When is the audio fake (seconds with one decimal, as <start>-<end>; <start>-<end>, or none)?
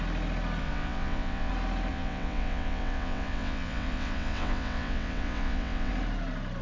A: 0.6-1.5; 1.9-5.9